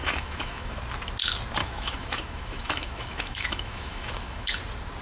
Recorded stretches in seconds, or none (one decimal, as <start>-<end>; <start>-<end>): 0.8-1.6; 4.6-5.0